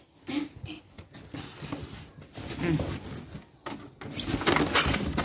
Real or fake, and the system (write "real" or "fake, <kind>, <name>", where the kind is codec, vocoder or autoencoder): real